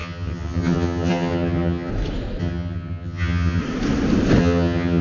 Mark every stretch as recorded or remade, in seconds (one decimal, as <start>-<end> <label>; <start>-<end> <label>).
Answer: 0.0-1.9 remade; 1.9-2.4 recorded; 2.4-3.6 remade; 3.6-4.4 recorded; 4.4-5.0 remade